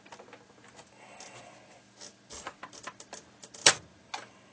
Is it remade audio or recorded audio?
recorded